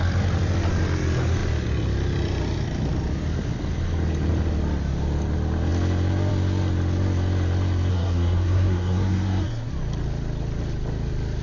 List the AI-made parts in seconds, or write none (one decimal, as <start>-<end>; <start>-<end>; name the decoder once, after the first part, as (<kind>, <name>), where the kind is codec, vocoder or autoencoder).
7.9-9.7 (codec, SNAC)